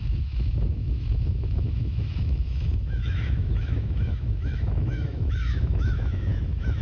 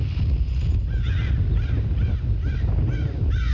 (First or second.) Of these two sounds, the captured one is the second